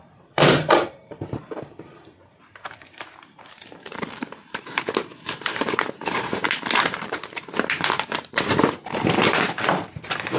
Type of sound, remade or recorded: remade